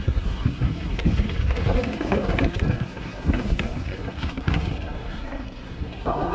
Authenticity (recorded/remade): remade